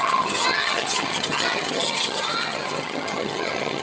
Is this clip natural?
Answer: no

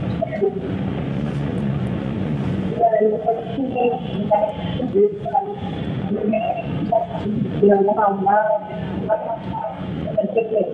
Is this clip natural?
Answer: no